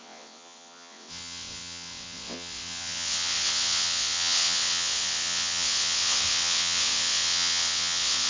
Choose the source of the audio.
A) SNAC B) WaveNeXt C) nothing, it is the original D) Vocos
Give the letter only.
B